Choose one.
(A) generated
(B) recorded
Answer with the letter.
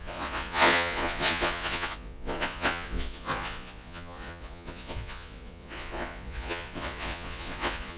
A